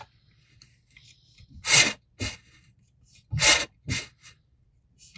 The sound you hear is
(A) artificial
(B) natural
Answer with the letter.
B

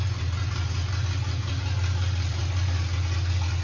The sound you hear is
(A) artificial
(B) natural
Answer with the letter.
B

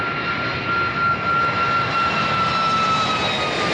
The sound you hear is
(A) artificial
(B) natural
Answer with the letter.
B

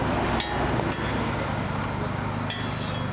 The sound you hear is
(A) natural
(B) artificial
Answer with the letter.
A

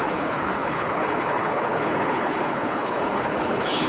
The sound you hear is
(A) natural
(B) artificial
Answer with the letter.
B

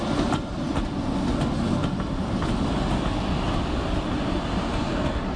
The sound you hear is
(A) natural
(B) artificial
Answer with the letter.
A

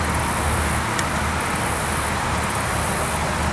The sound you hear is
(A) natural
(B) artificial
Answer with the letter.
A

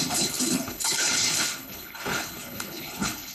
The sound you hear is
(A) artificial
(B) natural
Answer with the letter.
A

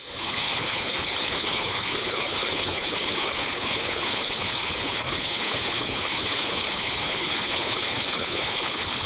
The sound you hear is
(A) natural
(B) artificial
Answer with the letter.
B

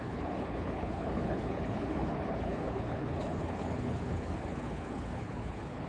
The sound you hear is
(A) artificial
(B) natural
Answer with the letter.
A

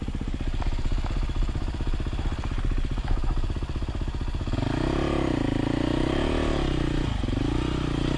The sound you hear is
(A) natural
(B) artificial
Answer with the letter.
A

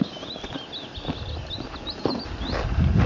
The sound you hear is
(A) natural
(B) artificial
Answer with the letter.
A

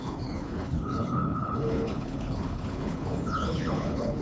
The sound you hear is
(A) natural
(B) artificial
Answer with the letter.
B